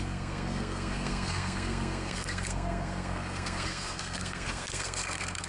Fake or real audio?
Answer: fake